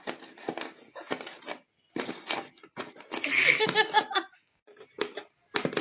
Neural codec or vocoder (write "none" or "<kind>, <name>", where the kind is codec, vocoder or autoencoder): none